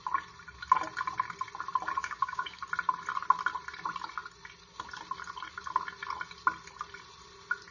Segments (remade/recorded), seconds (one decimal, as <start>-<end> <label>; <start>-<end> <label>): 0.0-2.0 recorded; 2.0-2.6 remade; 2.6-7.7 recorded